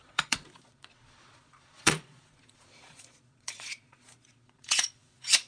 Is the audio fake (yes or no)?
yes